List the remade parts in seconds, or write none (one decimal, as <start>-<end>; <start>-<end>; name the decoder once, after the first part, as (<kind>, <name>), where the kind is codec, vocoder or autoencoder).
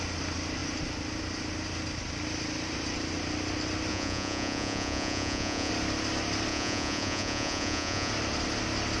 3.9-5.7 (vocoder, Vocos); 6.5-8.1